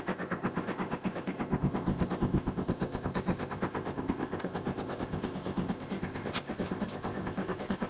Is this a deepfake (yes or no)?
yes